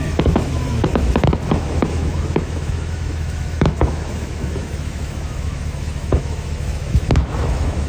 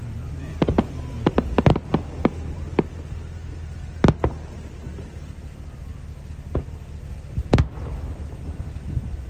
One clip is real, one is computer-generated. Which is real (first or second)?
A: second